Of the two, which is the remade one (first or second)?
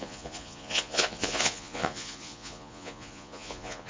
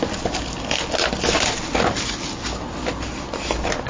first